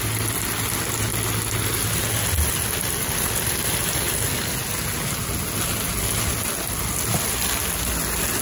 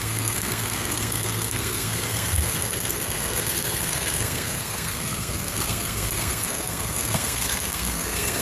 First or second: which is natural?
first